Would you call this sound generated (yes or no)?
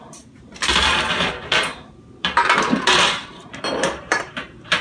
yes